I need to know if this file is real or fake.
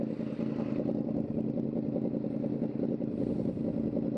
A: real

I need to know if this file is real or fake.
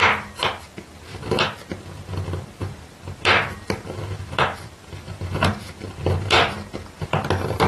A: fake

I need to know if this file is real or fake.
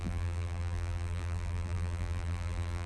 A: fake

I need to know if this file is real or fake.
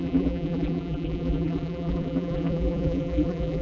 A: fake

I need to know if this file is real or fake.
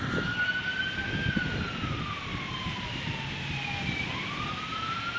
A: real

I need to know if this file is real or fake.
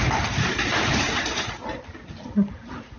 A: fake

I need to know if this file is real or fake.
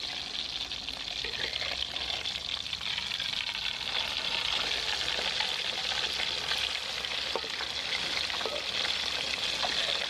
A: real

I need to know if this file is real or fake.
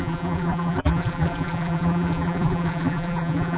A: fake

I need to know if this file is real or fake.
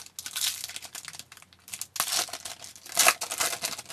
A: real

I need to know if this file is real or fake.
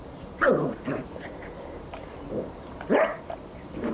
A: fake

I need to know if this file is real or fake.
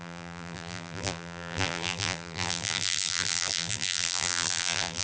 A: fake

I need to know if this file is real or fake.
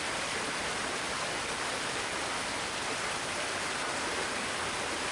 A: real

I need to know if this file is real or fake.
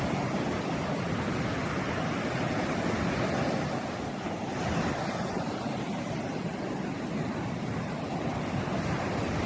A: real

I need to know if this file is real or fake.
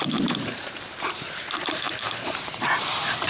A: fake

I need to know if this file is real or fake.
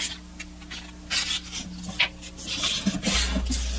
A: real